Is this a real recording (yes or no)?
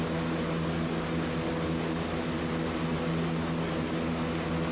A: yes